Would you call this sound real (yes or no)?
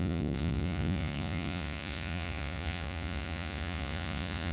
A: no